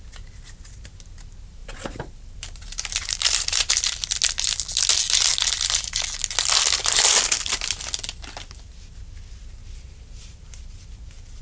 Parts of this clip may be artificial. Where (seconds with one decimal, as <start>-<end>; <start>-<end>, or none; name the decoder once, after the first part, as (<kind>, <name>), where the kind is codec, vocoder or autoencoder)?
1.6-3.7 (vocoder, BigVGAN v2); 9.5-10.6